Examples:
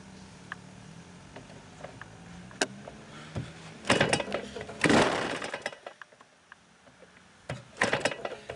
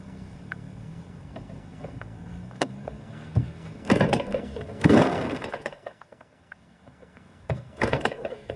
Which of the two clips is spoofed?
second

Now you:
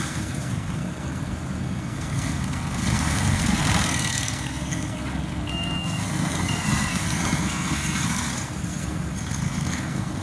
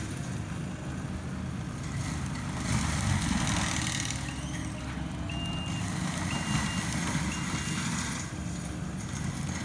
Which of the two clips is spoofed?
first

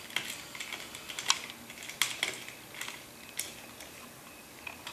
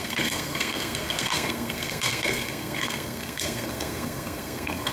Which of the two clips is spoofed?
second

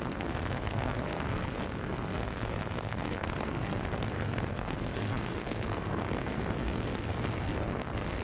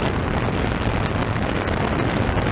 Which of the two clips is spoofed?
first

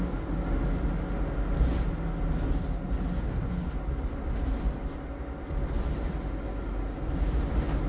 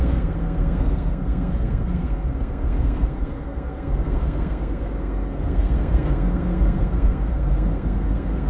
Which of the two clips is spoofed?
second